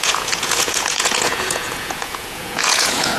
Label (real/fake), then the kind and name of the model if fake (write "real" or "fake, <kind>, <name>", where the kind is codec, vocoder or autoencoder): fake, vocoder, Vocos